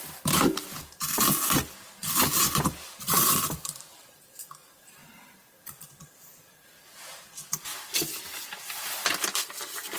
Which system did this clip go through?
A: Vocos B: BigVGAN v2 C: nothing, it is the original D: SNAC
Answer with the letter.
B